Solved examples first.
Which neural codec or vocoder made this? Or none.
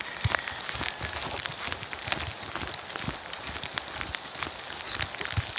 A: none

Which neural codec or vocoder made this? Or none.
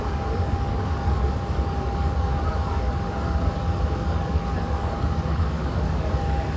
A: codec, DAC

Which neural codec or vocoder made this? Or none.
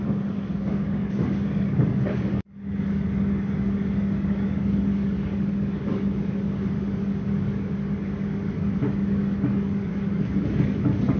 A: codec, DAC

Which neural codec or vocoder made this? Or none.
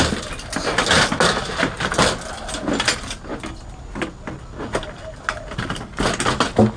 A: none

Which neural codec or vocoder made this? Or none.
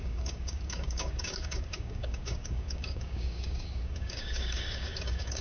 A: codec, DAC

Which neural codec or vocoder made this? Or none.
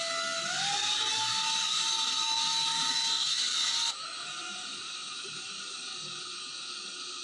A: codec, DAC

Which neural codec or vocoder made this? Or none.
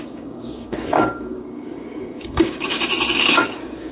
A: codec, DAC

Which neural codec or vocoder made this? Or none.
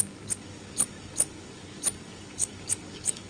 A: codec, DAC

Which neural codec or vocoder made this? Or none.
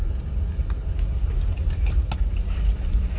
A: none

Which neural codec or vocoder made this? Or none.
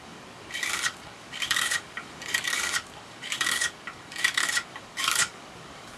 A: codec, DAC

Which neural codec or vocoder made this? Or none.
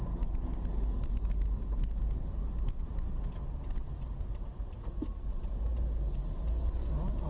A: none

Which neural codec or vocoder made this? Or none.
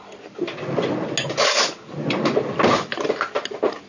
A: none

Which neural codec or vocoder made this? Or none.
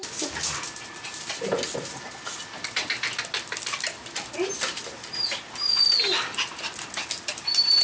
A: none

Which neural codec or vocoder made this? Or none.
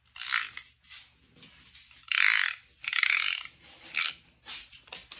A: none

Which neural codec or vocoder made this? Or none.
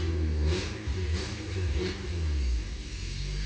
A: codec, DAC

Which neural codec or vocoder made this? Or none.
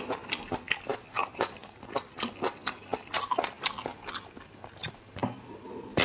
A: none